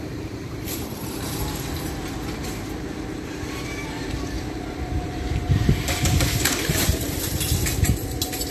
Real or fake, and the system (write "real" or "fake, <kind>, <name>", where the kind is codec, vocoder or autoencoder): fake, vocoder, BigVGAN v2